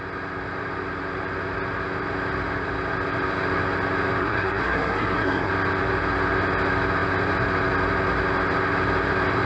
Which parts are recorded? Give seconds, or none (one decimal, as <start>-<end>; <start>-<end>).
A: 0.0-4.2; 5.5-9.5